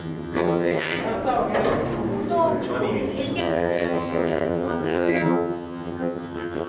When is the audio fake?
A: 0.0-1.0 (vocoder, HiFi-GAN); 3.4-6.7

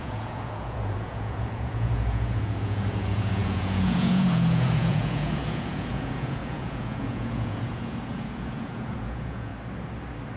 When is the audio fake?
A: 0.0-9.5 (vocoder, Vocos)

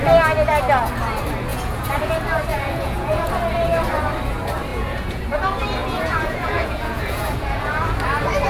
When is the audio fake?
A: 1.5-2.1 (vocoder, Vocos); 2.5-3.3; 4.7-5.2; 5.8-7.8

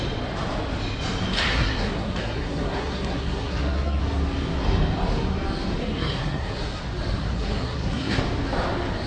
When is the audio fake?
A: 1.5-4.0 (codec, SNAC); 5.8-6.8; 7.2-8.2

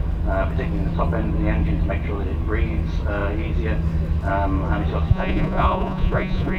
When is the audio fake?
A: 5.1-6.6 (vocoder, Vocos)

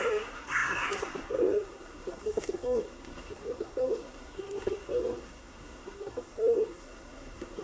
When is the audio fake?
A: 0.0-7.6 (codec, SNAC)

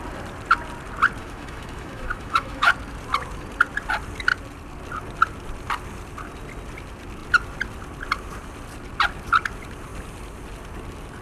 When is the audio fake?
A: 1.2-2.7 (autoencoder, DAC-VAE)